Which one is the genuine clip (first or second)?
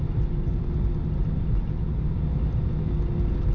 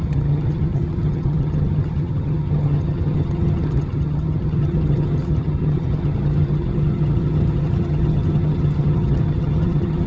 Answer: first